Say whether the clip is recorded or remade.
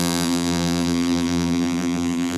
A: remade